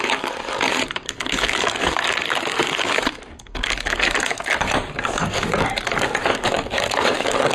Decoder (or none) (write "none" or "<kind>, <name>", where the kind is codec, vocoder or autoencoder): codec, DAC